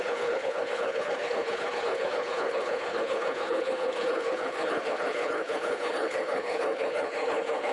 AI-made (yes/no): yes